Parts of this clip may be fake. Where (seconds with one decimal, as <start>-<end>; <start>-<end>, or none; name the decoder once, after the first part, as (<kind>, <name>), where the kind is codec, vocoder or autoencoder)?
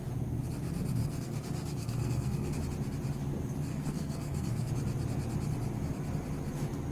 1.0-2.6 (codec, SNAC); 3.7-4.7